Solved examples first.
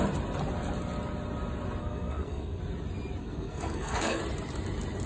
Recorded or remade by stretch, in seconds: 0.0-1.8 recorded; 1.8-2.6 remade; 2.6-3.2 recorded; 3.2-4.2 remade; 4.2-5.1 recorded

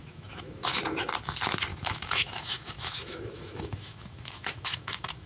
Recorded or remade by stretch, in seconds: 0.0-0.8 remade; 0.8-1.7 recorded; 1.7-5.3 remade

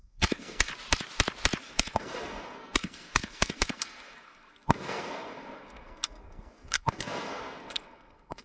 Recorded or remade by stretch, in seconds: 0.0-0.7 remade; 0.7-1.6 recorded; 1.6-8.4 remade

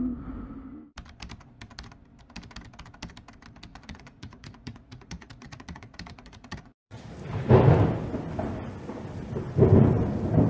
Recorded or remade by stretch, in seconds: 0.0-3.7 recorded; 3.7-7.1 remade; 7.1-10.5 recorded